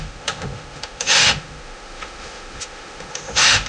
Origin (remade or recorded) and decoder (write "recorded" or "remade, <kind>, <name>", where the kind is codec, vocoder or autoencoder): remade, autoencoder, DAC-VAE